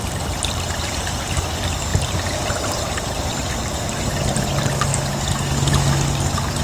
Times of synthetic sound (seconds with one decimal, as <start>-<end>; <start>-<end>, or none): 0.0-4.9